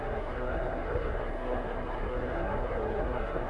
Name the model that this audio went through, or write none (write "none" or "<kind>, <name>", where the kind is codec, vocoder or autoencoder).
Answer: codec, SNAC